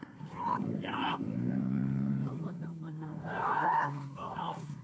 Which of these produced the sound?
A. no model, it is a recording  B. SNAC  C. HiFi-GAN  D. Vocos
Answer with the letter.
B